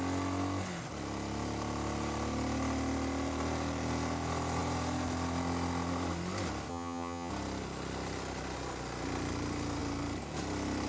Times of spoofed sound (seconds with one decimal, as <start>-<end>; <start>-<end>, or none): 6.7-7.3